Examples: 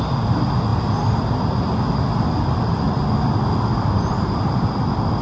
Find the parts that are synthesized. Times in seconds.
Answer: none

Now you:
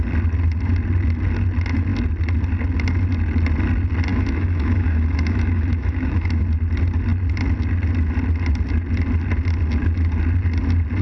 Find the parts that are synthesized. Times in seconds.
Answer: 4.1-6.4 (autoencoder, DAC-VAE)